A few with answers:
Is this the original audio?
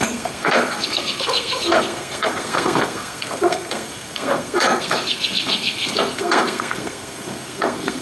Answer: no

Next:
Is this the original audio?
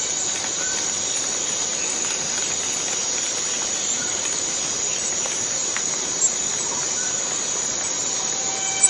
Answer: yes